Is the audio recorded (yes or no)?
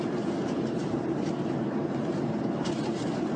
no